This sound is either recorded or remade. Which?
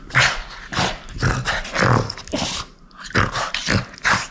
recorded